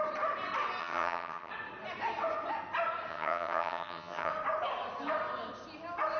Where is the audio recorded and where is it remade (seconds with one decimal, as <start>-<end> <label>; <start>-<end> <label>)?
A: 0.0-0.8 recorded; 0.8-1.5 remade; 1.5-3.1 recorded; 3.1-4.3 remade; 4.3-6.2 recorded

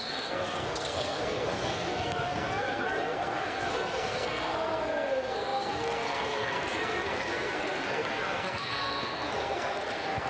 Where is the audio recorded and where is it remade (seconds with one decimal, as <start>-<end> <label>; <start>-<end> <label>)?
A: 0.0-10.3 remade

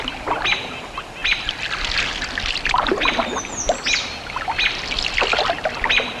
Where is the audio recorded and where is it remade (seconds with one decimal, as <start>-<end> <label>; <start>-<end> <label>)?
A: 0.0-6.2 recorded

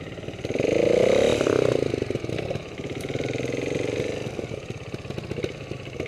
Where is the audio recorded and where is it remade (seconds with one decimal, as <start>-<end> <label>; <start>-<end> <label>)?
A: 0.0-6.1 recorded